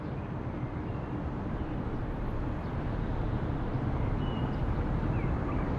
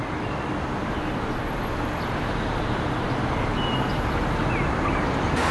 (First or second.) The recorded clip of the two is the second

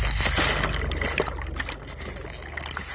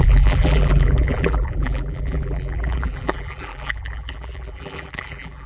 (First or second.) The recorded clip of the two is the first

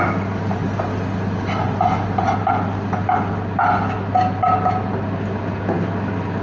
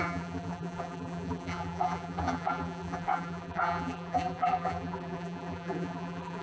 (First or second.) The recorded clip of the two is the first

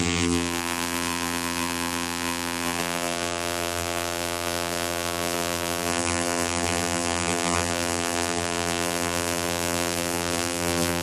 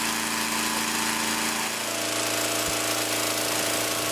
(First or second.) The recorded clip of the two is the second